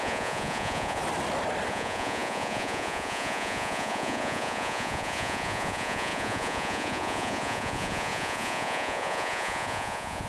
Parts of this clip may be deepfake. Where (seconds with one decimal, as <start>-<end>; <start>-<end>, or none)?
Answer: 0.0-1.0; 1.7-10.3